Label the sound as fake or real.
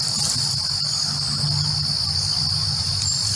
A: real